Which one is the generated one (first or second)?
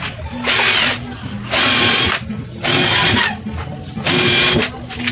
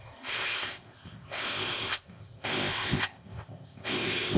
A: second